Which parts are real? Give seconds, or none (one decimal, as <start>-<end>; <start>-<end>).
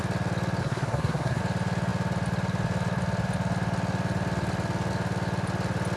0.0-0.6; 1.4-6.0